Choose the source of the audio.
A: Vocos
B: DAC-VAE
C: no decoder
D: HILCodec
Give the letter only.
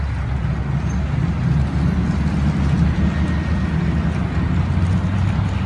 C